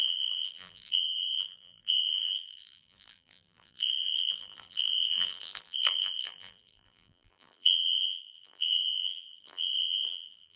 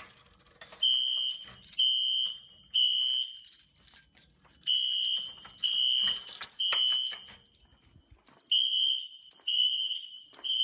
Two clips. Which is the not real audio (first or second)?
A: first